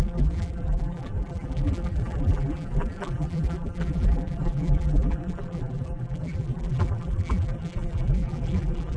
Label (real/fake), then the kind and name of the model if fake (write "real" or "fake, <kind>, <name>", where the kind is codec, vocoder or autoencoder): fake, vocoder, BigVGAN v2